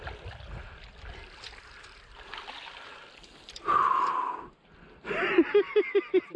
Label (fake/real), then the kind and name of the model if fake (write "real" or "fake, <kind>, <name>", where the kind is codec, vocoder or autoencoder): real